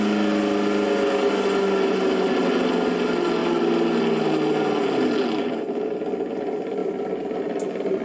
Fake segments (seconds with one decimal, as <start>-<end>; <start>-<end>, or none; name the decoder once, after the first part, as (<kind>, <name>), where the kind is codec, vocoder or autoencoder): none